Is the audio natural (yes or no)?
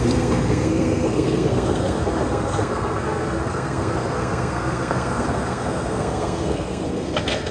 no